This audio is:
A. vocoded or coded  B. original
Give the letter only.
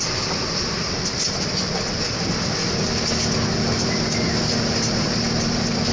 B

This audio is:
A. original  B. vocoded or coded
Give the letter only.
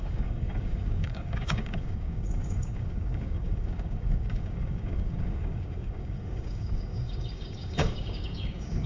B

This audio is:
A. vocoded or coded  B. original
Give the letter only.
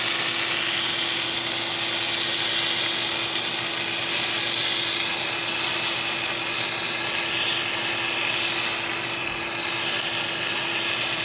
B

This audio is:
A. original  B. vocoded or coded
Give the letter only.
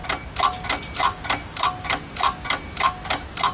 A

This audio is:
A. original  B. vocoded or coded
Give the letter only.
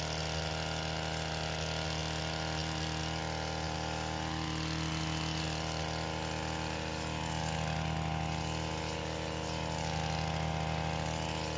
A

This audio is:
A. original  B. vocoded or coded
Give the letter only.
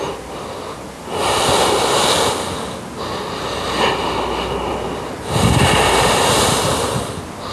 A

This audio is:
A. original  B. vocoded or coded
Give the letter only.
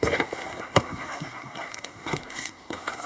B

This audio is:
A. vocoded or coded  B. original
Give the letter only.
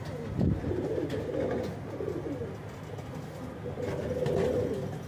B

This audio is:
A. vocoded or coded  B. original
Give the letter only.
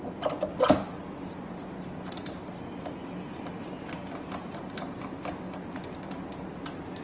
B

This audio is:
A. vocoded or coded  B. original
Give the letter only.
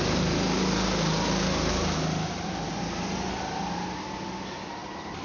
B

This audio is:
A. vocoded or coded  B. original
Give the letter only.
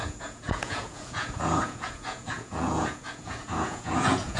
A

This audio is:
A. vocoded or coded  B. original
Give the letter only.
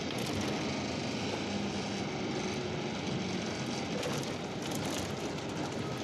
B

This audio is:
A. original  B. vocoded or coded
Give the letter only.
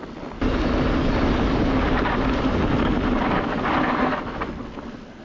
A